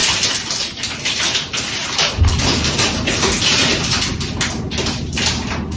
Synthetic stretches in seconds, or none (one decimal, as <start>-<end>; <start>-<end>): 1.8-3.3